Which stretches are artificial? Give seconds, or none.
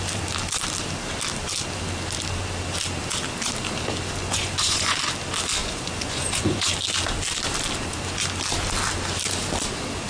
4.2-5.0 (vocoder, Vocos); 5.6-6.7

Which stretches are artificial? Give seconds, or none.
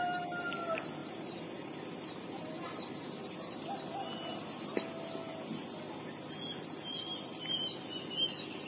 1.0-2.4 (vocoder, BigVGAN v2)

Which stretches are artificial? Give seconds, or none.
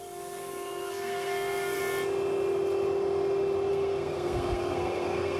0.0-1.8 (codec, SNAC); 3.7-5.4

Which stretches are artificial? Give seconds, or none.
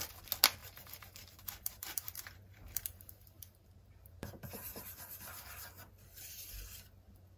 0.6-4.8 (vocoder, BigVGAN v2)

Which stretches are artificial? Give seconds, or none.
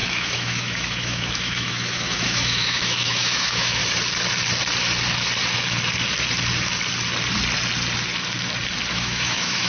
0.0-3.8 (autoencoder, DAC-VAE); 8.9-9.7